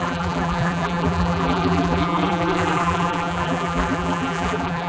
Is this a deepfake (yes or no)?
yes